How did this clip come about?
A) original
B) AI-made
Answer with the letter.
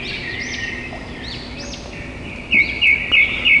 A